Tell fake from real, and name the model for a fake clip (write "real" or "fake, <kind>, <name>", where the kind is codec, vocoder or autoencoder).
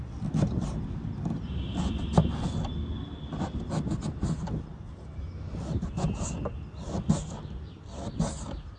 real